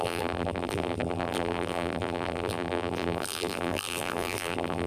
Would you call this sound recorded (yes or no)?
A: no